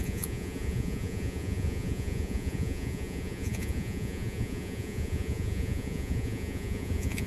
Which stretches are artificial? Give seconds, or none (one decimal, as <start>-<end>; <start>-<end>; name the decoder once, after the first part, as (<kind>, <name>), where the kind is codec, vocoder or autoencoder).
0.0-7.3 (vocoder, Vocos)